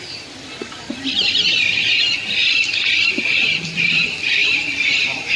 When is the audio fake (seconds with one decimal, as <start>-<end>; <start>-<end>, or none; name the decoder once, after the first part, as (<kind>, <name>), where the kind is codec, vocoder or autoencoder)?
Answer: 2.4-3.1 (vocoder, BigVGAN v2); 4.4-5.0